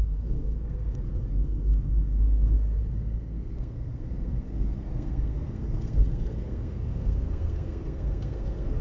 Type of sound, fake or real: fake